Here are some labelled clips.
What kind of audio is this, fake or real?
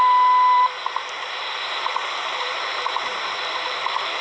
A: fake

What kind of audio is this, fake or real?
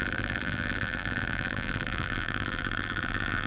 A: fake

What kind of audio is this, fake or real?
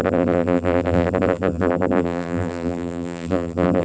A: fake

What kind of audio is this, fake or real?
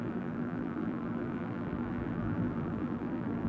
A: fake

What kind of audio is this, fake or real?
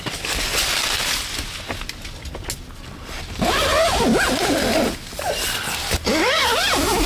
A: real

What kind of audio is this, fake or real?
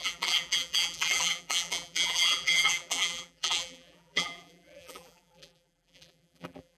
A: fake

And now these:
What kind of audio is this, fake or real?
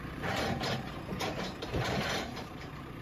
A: fake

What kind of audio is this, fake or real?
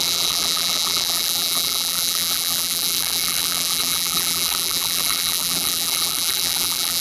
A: fake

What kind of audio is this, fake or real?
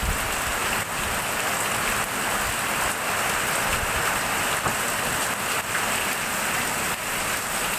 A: real